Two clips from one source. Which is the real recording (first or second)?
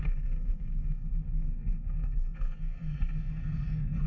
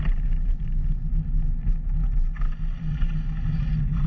second